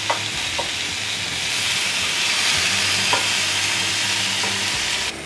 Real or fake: real